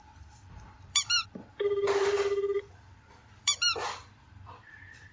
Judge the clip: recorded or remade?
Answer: remade